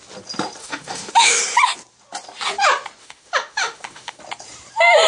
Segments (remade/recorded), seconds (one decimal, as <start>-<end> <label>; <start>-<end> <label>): 0.0-0.6 recorded; 0.6-1.4 remade; 1.4-3.0 recorded; 3.0-4.2 remade; 4.2-5.1 recorded